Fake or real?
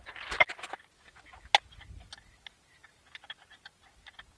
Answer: real